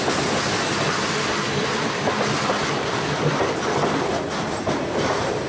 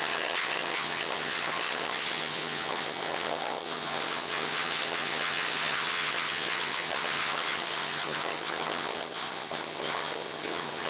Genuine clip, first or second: first